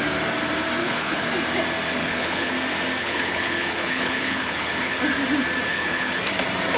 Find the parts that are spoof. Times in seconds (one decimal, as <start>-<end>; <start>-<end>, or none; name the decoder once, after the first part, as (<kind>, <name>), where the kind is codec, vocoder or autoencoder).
0.8-1.3 (codec, HILCodec); 2.0-2.5; 3.0-5.0; 5.7-6.2